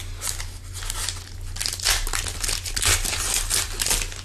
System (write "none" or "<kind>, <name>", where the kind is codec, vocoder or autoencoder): none